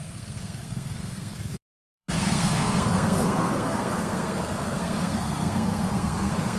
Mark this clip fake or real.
fake